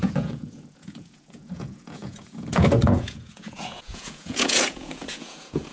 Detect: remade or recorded remade